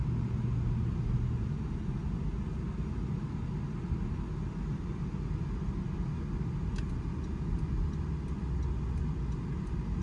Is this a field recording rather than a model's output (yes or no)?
yes